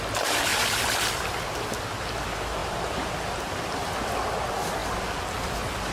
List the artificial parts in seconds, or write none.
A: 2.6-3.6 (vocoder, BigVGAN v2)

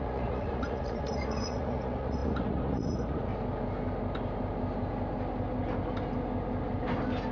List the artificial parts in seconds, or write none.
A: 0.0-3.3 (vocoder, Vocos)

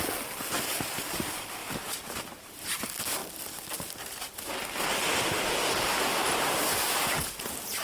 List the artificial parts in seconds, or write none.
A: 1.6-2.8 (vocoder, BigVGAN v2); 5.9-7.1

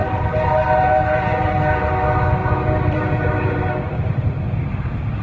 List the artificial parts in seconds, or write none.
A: 0.0-1.5 (vocoder, BigVGAN v2); 2.4-4.4

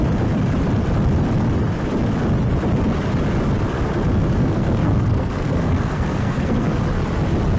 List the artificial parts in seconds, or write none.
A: 4.4-6.8 (codec, SNAC)

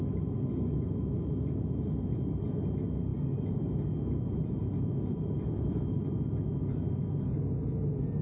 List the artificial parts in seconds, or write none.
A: 5.1-6.1 (vocoder, BigVGAN v2)

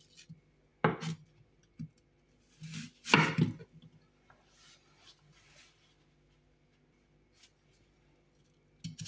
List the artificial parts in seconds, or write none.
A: none